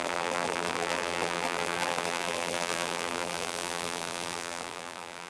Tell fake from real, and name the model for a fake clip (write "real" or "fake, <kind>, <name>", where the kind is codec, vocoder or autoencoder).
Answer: fake, vocoder, BigVGAN v2